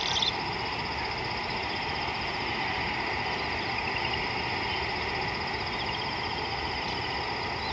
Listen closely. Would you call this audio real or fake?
real